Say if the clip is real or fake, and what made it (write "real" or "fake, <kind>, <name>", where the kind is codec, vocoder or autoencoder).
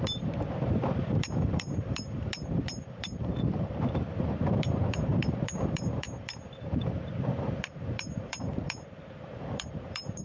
fake, vocoder, BigVGAN v2